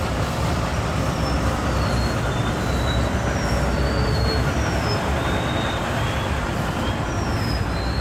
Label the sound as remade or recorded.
recorded